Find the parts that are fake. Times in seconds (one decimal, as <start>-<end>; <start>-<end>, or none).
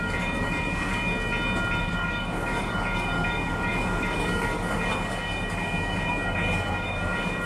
0.0-1.1; 1.8-7.5